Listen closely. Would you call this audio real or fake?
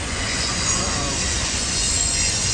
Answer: fake